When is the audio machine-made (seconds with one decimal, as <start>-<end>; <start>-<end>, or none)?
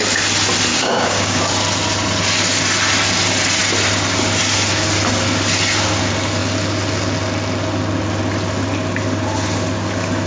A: 0.7-1.4